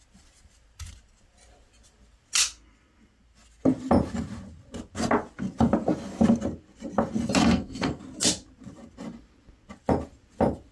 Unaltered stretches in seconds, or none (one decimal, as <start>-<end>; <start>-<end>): 0.0-7.4; 8.0-10.7